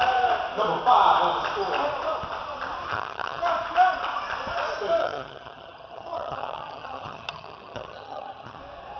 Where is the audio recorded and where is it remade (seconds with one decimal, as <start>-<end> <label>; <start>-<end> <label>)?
0.0-2.9 recorded; 2.9-3.4 remade; 3.4-5.0 recorded; 5.0-8.6 remade; 8.6-9.0 recorded